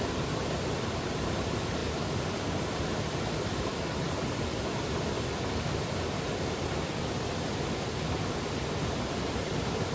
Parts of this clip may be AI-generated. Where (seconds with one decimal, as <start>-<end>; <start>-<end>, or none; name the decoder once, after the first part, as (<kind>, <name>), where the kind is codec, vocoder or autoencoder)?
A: 0.0-9.9 (vocoder, BigVGAN v2)